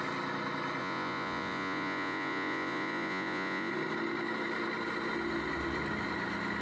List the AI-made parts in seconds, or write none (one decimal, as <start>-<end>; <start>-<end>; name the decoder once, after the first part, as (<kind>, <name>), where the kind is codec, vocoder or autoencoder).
0.8-3.7 (vocoder, Vocos)